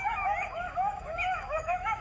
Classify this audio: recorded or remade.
remade